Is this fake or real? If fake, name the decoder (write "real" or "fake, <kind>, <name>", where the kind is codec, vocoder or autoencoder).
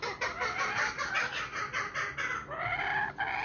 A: real